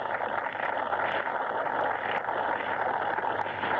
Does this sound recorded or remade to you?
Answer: recorded